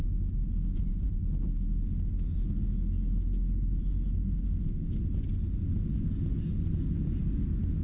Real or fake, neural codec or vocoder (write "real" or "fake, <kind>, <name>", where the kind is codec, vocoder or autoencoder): real